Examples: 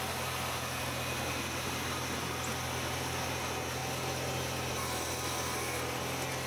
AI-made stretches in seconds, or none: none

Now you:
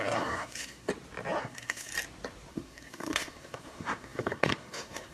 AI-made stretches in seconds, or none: 0.0-0.9; 1.4-1.9; 2.5-5.1

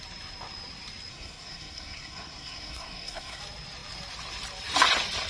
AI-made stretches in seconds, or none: 1.1-3.4

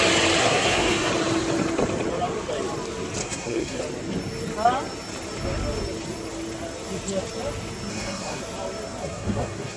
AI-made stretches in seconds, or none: 0.4-1.1; 3.2-3.8; 7.9-8.4; 9.0-9.8